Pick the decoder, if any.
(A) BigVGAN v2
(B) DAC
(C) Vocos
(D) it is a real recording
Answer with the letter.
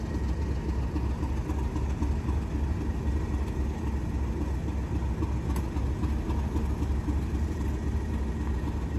D